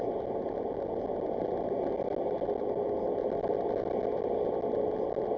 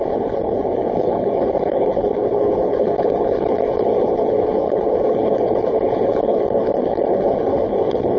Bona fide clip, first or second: first